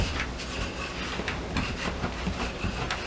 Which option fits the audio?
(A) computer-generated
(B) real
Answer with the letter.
B